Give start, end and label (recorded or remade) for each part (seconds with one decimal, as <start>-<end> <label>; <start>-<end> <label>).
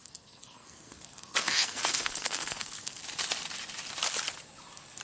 0.0-3.0 remade; 3.0-5.0 recorded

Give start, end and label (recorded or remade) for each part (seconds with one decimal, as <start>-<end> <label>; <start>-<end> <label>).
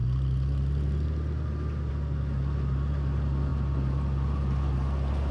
0.0-5.3 recorded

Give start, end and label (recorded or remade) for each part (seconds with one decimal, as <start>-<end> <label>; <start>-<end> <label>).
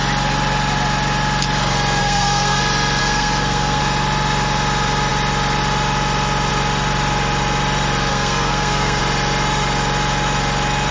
0.0-2.0 recorded; 2.0-2.6 remade; 2.6-3.0 recorded; 3.0-3.8 remade; 3.8-8.1 recorded; 8.1-9.0 remade; 9.0-10.9 recorded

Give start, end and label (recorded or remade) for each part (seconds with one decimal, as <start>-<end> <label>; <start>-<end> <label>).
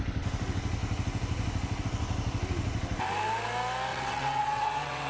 0.0-3.9 recorded; 3.9-5.1 remade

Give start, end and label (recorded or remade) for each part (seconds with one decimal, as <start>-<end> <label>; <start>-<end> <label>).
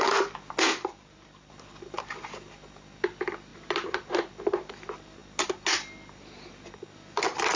0.0-0.7 recorded; 0.7-1.5 remade; 1.5-3.5 recorded; 3.5-4.7 remade; 4.7-7.6 recorded